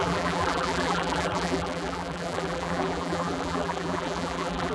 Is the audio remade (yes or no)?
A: yes